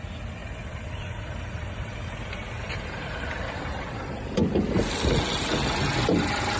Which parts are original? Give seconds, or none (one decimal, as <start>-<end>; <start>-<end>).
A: 0.0-0.4; 4.4-6.6